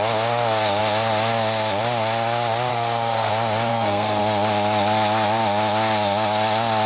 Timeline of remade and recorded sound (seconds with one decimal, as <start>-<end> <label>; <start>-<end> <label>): 0.0-2.7 recorded; 2.7-3.3 remade; 3.3-3.7 recorded; 3.7-4.2 remade; 4.2-6.9 recorded